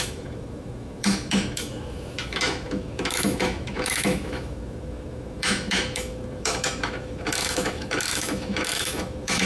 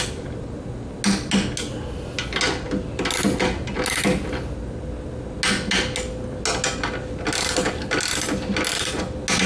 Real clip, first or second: second